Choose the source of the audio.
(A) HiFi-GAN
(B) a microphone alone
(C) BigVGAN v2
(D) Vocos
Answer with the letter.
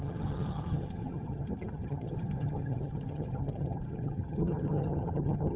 A